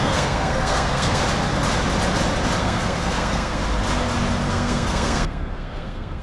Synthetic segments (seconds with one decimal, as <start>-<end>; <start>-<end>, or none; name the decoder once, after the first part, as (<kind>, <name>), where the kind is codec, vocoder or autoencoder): 0.0-1.2 (codec, SNAC); 2.6-3.6; 4.5-6.2